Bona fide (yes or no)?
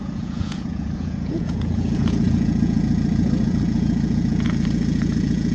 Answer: no